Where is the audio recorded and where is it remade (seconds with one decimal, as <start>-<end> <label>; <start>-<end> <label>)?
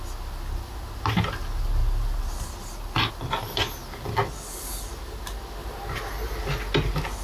0.0-1.8 recorded; 1.8-3.1 remade; 3.1-5.6 recorded; 5.6-6.4 remade; 6.4-7.2 recorded